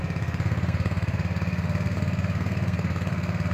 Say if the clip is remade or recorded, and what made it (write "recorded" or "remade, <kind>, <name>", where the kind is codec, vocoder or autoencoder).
remade, codec, SNAC